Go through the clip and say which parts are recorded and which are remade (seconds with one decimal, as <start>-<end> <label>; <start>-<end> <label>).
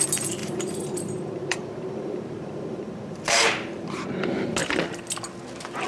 0.0-0.4 recorded; 0.4-3.9 remade; 3.9-5.9 recorded